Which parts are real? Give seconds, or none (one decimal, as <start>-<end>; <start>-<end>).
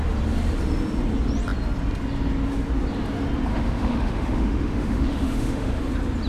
0.0-3.5; 5.8-6.3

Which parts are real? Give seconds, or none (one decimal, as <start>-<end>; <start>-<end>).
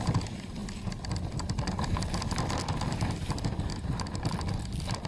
none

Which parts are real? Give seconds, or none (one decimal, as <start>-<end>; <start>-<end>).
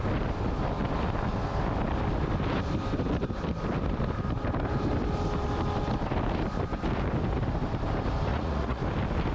0.0-8.3; 8.8-9.3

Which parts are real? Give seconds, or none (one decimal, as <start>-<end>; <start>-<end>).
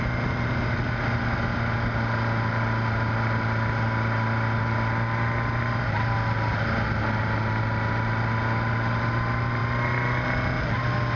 0.0-11.2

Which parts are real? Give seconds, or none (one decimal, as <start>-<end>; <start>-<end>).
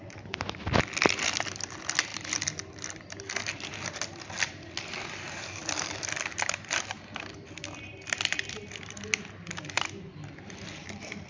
0.0-2.1; 3.5-11.3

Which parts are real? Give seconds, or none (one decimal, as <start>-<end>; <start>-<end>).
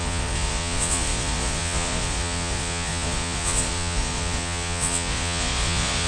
none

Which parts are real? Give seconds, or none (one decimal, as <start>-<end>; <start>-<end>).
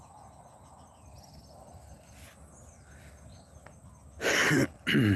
0.0-5.2